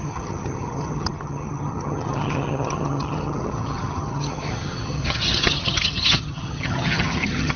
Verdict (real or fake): fake